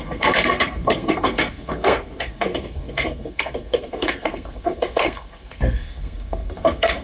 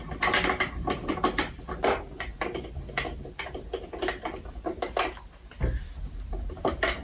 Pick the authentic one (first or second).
second